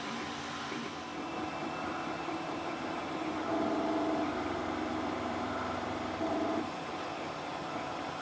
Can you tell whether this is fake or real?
fake